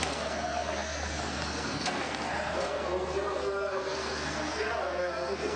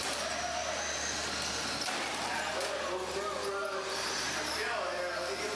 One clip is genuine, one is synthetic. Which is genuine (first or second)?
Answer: second